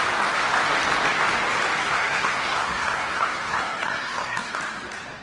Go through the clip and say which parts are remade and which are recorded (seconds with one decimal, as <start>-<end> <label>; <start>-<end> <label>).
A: 0.0-1.8 recorded; 1.8-4.6 remade; 4.6-5.2 recorded